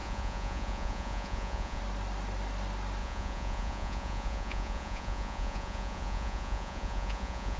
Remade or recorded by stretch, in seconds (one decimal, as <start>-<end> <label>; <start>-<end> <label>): 0.0-1.8 remade; 1.8-3.0 recorded; 3.0-7.6 remade